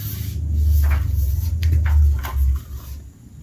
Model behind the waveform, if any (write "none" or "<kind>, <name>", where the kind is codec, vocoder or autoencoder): none